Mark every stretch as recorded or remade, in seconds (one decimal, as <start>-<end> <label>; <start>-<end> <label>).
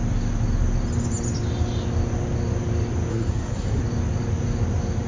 0.0-3.1 recorded; 3.1-3.8 remade; 3.8-5.1 recorded